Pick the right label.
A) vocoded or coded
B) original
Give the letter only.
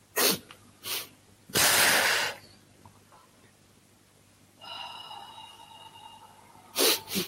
B